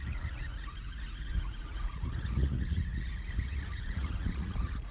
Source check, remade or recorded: remade